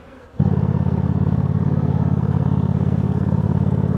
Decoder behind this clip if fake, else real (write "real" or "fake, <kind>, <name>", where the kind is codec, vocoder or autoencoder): fake, codec, SNAC